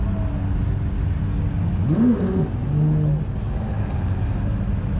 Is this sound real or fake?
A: real